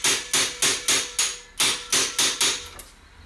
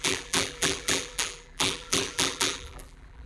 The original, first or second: first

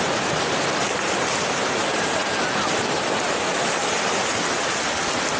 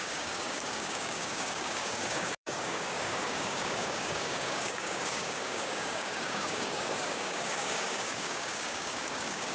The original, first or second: first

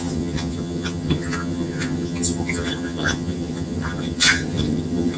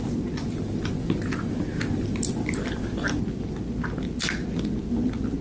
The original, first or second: second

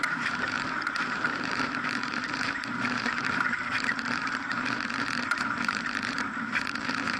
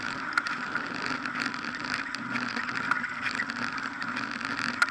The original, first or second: second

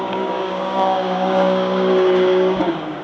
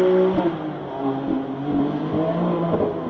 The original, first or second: second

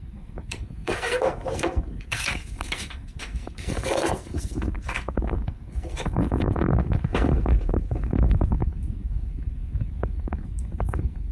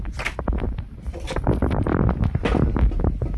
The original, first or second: second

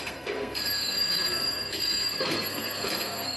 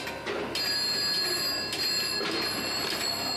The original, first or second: second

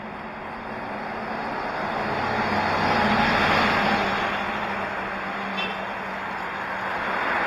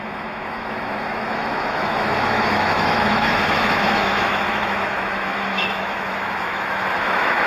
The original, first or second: first